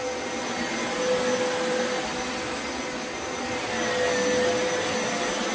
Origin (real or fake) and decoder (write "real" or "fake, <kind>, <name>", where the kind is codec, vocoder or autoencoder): real